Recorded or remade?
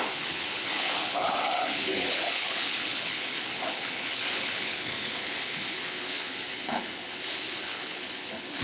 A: remade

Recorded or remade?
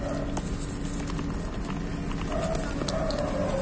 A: recorded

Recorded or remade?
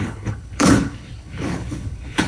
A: remade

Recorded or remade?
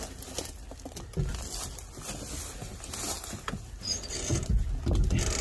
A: recorded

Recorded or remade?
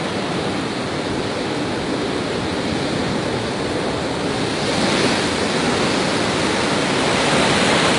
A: recorded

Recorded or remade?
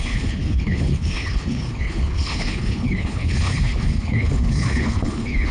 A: remade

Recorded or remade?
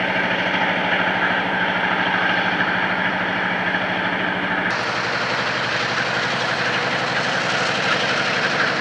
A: recorded